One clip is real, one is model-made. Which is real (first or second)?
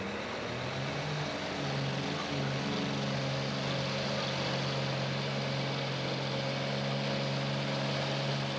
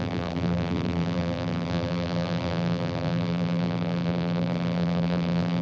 first